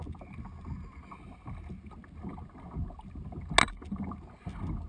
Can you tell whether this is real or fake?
real